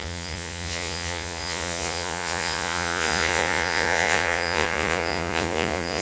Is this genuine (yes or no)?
no